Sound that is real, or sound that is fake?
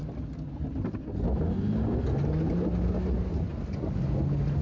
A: real